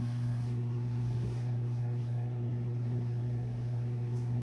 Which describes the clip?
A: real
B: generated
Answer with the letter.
B